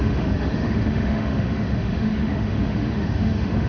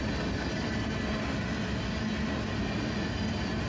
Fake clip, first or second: first